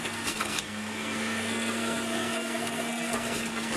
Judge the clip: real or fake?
fake